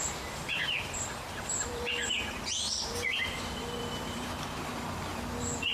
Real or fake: fake